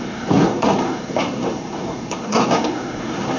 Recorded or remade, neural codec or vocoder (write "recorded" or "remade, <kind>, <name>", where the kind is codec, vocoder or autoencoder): remade, codec, SNAC